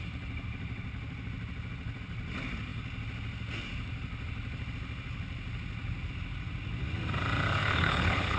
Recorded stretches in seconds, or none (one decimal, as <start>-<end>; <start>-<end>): 0.0-7.6